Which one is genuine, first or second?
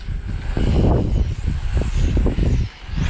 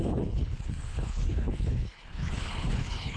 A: first